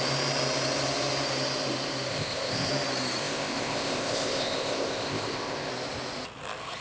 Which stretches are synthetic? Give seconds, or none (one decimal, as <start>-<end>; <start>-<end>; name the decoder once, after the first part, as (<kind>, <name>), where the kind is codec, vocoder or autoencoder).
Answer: 2.1-2.7 (codec, ZipCodec); 3.2-5.7